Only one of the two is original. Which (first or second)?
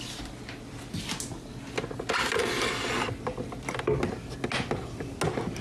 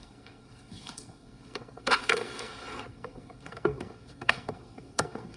first